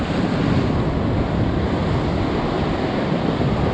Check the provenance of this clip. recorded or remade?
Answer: recorded